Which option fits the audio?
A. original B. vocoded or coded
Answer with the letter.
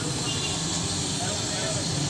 A